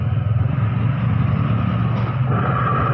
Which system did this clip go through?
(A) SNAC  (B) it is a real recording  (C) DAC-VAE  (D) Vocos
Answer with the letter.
B